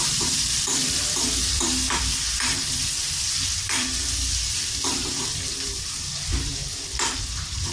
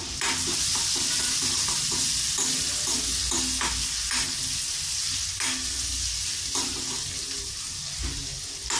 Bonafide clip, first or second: second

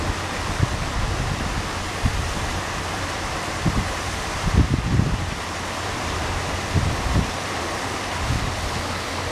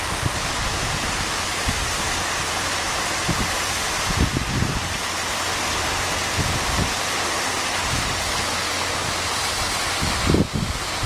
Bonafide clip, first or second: second